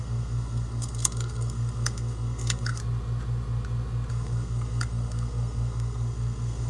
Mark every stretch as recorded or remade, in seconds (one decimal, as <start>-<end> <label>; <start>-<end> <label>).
0.0-2.8 remade; 2.8-4.1 recorded; 4.1-6.7 remade